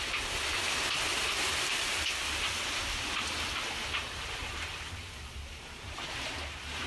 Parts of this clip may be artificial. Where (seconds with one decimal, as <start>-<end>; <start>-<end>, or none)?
1.5-2.0; 4.0-4.9